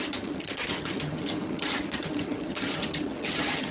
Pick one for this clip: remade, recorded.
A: remade